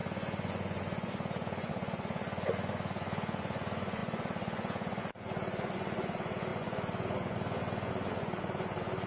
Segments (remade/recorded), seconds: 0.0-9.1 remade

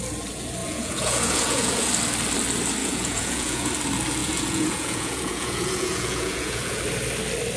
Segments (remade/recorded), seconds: 0.0-0.6 recorded; 0.6-1.9 remade; 1.9-2.8 recorded; 2.8-3.7 remade; 3.7-4.2 recorded; 4.2-6.8 remade; 6.8-7.6 recorded

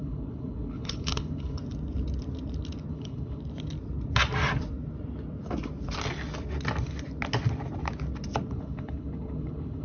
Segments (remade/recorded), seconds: 0.0-1.6 remade; 1.6-2.9 recorded; 2.9-3.4 remade; 3.4-8.5 recorded; 8.5-9.8 remade

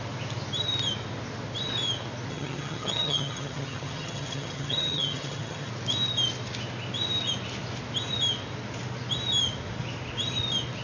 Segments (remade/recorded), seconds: 0.0-2.3 recorded; 2.3-5.7 remade; 5.7-10.8 recorded

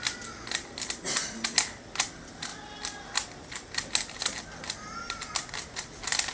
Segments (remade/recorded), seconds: 0.0-6.3 recorded

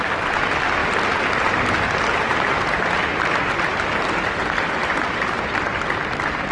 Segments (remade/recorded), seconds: 0.0-6.5 recorded

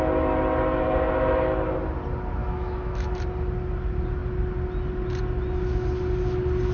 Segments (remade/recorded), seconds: 0.0-2.4 recorded; 2.4-3.2 remade; 3.2-6.7 recorded

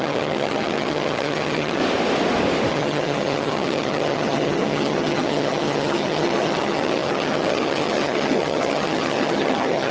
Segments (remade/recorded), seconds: 0.0-1.8 remade; 1.8-2.7 recorded; 2.7-9.9 remade